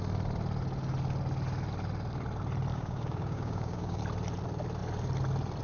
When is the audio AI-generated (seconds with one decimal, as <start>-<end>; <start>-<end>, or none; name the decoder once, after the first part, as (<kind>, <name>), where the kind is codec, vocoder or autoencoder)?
2.7-4.0 (codec, DAC)